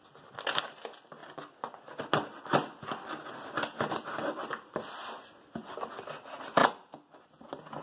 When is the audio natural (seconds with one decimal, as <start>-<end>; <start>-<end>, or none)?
0.0-7.8